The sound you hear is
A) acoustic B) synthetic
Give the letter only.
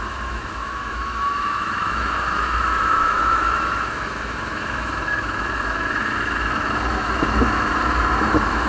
B